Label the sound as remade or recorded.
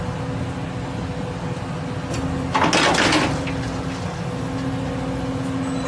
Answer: recorded